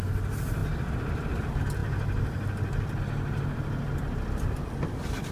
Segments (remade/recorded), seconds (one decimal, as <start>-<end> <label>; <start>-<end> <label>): 0.0-5.3 recorded